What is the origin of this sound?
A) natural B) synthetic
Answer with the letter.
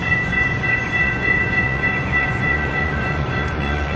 B